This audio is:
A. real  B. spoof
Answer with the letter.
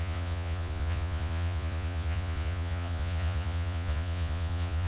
B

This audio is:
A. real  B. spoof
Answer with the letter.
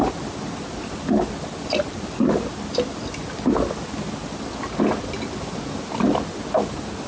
A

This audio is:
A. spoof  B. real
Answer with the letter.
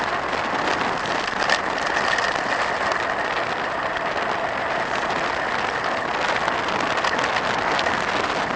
B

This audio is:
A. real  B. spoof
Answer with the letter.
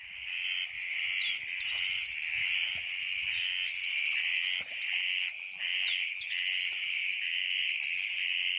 A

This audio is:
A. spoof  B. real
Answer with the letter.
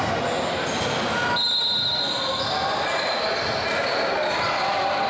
B